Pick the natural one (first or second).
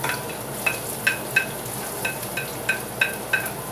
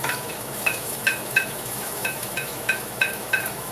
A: first